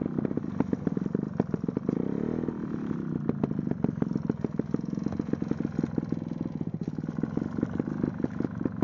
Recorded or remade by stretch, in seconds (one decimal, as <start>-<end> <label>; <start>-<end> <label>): 0.0-8.8 recorded